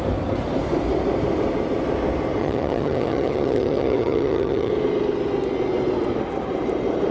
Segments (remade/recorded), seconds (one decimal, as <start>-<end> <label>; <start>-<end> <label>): 0.0-2.4 recorded; 2.4-4.7 remade; 4.7-7.1 recorded

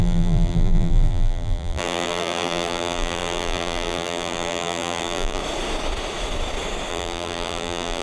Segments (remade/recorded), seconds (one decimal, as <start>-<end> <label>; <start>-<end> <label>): 0.0-5.4 remade; 5.4-6.9 recorded; 6.9-8.0 remade

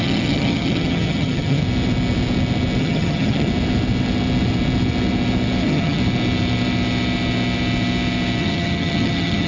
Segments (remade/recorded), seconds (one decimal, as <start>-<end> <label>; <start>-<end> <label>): 0.0-1.6 remade; 1.6-2.8 recorded; 2.8-3.5 remade; 3.5-5.6 recorded; 5.6-6.0 remade; 6.0-8.4 recorded; 8.4-9.5 remade

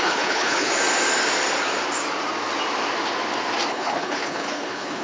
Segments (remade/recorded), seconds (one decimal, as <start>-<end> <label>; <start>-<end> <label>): 0.0-0.7 remade; 0.7-3.7 recorded; 3.7-5.0 remade

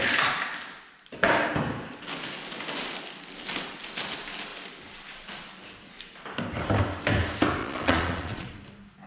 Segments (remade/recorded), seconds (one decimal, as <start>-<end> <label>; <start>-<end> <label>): 0.0-7.6 recorded; 7.6-8.5 remade; 8.5-9.1 recorded

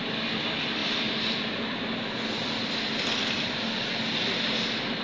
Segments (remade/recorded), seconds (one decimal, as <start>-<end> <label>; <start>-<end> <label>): 0.0-5.0 recorded

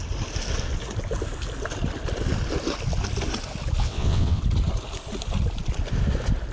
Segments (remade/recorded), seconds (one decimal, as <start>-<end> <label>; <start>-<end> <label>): 0.0-3.8 recorded; 3.8-4.4 remade; 4.4-6.5 recorded